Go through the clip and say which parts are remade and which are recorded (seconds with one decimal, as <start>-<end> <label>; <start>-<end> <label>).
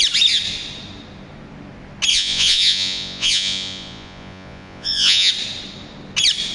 0.0-2.1 recorded; 2.1-5.3 remade; 5.3-6.5 recorded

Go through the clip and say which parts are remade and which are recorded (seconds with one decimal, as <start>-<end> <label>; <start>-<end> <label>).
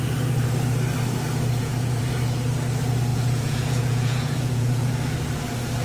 0.0-1.6 recorded; 1.6-2.1 remade; 2.1-3.1 recorded; 3.1-4.9 remade; 4.9-5.8 recorded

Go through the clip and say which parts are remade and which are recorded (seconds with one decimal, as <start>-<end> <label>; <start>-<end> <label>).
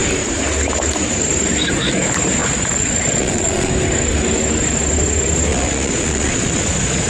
0.0-2.4 recorded; 2.4-3.7 remade; 3.7-5.5 recorded; 5.5-7.1 remade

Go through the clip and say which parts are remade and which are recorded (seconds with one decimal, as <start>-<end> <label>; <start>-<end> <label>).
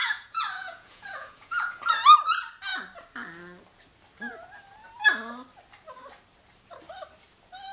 0.0-1.9 remade; 1.9-7.7 recorded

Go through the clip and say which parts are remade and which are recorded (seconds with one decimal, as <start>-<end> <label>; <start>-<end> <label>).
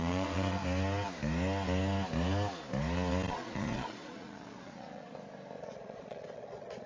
0.0-0.6 remade; 0.6-3.3 recorded; 3.3-5.1 remade; 5.1-5.6 recorded; 5.6-6.9 remade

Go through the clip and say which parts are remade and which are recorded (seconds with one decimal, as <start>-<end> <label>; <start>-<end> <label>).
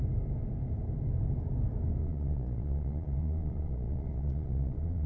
0.0-2.0 recorded; 2.0-5.1 remade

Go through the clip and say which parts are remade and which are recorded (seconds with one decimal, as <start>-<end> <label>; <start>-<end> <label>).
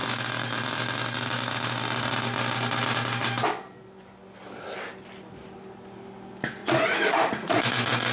0.0-6.6 recorded; 6.6-7.6 remade; 7.6-8.1 recorded